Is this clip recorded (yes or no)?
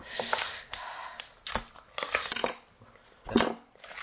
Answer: yes